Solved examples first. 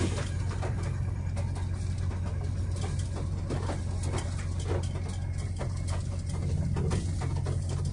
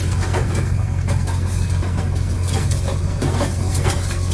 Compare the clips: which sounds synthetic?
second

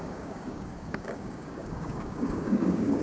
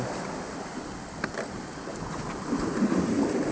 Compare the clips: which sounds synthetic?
first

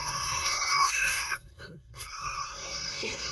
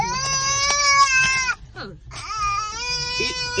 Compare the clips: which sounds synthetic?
first